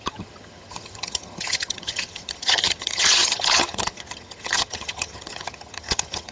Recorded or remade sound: remade